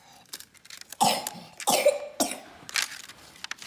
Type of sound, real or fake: real